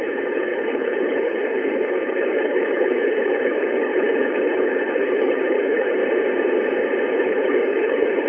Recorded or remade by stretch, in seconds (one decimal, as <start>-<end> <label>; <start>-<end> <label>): 0.0-6.0 remade; 6.0-7.1 recorded; 7.1-8.3 remade